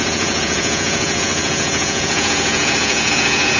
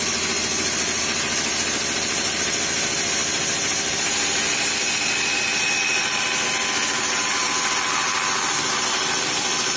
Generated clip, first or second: first